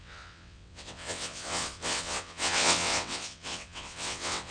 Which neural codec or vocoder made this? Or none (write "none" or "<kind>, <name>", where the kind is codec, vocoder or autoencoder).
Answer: vocoder, WaveNeXt